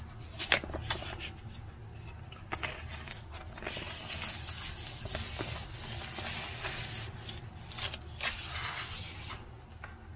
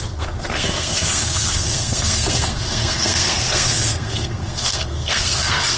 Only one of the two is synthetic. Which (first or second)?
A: second